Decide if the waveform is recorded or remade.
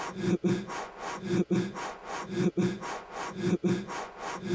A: remade